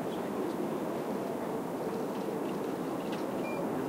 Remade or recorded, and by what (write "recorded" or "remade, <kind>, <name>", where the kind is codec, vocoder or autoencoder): recorded